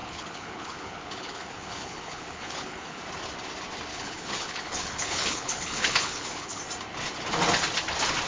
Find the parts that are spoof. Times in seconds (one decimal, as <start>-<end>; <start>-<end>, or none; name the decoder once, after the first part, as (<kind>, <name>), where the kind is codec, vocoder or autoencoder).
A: 0.0-3.0 (codec, HILCodec); 3.9-6.6